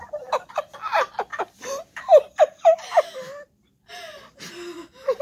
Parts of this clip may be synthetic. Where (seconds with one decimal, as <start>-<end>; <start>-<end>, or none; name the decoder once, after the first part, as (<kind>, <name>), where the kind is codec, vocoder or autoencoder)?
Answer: 1.3-4.4 (vocoder, BigVGAN v2)